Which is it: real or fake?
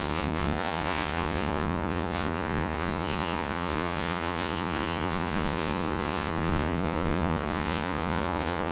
fake